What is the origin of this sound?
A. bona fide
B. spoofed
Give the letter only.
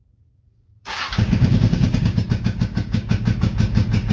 B